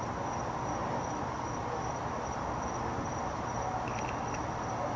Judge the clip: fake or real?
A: real